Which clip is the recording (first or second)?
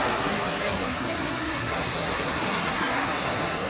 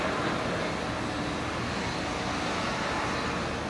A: second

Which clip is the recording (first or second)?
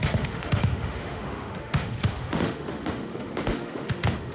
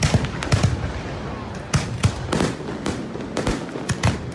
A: second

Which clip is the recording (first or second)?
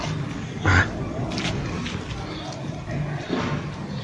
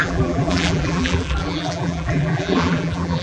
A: first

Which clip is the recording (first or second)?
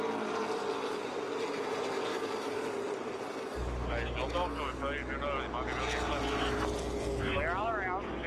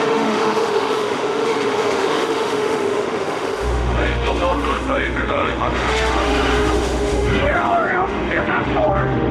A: first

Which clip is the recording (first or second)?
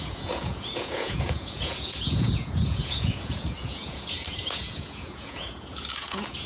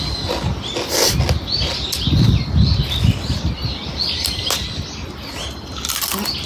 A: second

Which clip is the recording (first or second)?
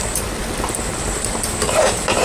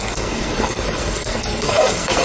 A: first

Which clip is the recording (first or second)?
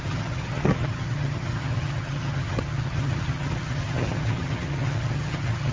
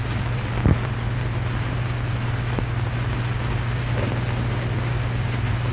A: second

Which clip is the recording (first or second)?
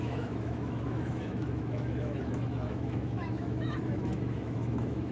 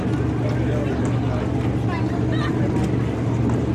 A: second